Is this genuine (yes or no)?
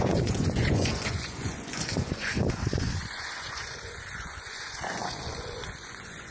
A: no